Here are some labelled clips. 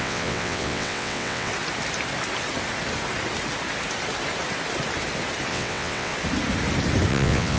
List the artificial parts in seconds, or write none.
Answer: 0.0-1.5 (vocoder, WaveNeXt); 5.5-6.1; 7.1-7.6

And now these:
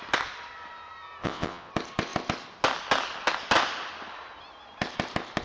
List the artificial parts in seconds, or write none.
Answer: 1.2-1.7 (vocoder, WaveNeXt)

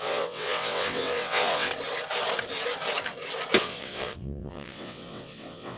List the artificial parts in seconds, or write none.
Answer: 0.0-1.7 (vocoder, WaveNeXt); 3.6-5.8

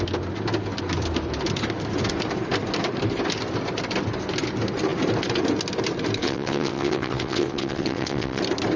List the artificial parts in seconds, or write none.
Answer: 6.2-8.4 (vocoder, WaveNeXt)